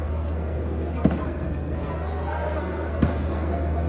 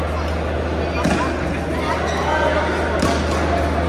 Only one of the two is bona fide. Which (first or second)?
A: second